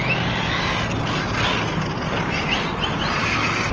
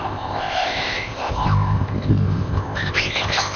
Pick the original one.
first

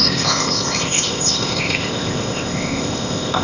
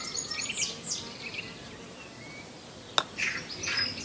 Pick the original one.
second